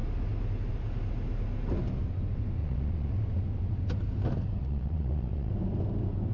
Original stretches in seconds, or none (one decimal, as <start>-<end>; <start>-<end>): 0.0-2.6; 3.1-4.6; 5.5-6.3